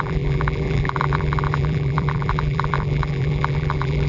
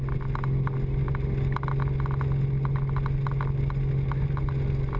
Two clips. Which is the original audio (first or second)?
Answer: second